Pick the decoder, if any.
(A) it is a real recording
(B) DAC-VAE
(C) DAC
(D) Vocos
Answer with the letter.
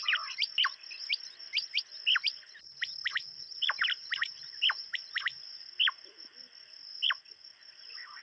A